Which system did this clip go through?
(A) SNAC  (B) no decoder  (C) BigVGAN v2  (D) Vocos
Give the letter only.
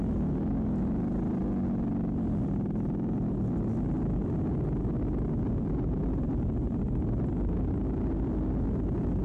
B